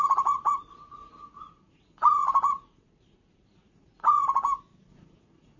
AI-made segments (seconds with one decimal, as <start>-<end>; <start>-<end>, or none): 0.0-4.2; 4.9-5.6